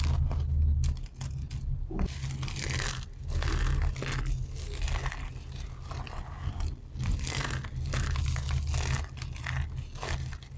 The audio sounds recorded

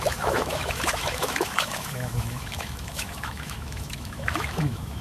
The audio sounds remade